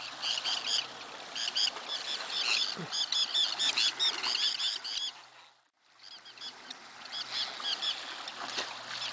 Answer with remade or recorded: recorded